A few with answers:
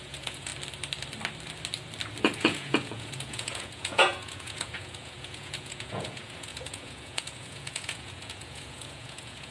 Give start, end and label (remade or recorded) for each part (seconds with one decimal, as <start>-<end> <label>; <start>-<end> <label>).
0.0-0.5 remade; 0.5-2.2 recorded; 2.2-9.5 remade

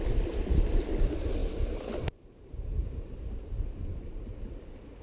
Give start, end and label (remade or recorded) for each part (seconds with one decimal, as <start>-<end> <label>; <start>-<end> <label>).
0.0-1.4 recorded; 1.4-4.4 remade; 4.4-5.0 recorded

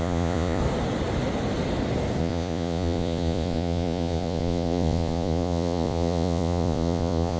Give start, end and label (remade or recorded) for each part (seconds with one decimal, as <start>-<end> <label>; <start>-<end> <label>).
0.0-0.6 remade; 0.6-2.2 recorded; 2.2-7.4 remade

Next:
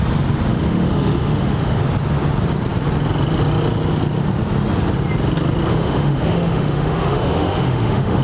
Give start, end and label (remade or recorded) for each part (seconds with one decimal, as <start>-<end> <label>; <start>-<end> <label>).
0.0-0.5 recorded; 0.5-1.8 remade; 1.8-5.7 recorded; 5.7-8.2 remade

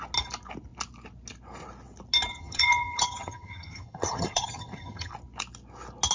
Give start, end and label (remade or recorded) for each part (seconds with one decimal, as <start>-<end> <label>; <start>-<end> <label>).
0.0-2.3 recorded; 2.3-5.1 remade; 5.1-6.1 recorded